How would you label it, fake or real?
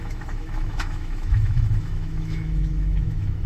fake